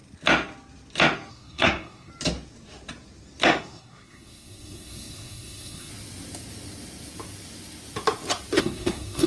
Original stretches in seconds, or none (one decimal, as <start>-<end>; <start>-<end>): 0.0-1.3; 2.1-3.6; 5.9-8.6